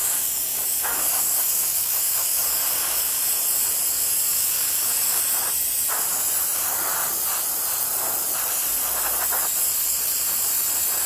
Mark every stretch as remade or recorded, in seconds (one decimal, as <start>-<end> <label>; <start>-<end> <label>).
0.0-3.2 remade; 3.2-4.3 recorded; 4.3-5.2 remade; 5.2-11.1 recorded

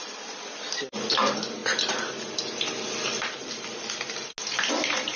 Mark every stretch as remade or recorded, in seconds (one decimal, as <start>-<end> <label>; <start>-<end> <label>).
0.0-1.6 remade; 1.6-4.7 recorded; 4.7-5.2 remade

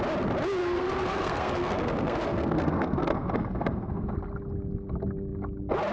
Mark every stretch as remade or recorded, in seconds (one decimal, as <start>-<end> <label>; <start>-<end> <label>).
0.0-0.6 recorded; 0.6-4.1 remade; 4.1-5.9 recorded

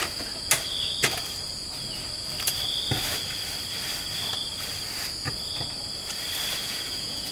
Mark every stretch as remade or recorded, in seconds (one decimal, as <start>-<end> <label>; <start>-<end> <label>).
0.0-6.6 recorded; 6.6-7.3 remade

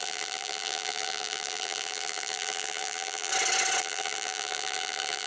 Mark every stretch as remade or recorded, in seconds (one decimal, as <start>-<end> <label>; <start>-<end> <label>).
0.0-3.3 remade; 3.3-3.8 recorded; 3.8-5.3 remade

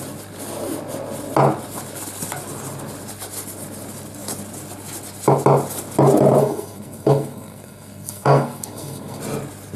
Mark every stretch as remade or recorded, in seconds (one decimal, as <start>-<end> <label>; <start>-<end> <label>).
0.0-6.4 recorded; 6.4-9.2 remade; 9.2-9.8 recorded

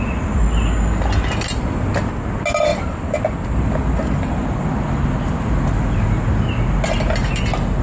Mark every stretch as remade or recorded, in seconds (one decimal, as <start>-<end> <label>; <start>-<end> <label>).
0.0-2.7 recorded; 2.7-4.3 remade; 4.3-7.8 recorded